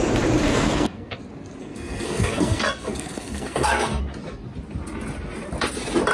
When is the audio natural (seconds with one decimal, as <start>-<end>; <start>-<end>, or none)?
0.0-0.5; 1.2-1.6; 4.0-6.1